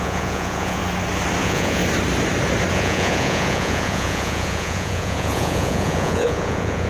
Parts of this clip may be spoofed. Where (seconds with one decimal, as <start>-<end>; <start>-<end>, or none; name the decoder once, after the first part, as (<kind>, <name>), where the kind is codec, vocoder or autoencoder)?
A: 0.0-0.8 (vocoder, Vocos); 1.4-1.8; 2.7-6.9